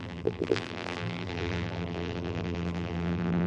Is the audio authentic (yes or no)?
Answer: no